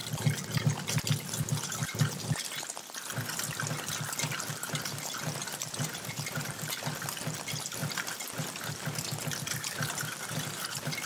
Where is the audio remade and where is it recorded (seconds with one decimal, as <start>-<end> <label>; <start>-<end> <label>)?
0.0-3.9 recorded; 3.9-11.1 remade